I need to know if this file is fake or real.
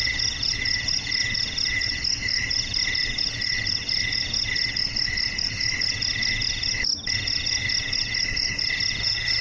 real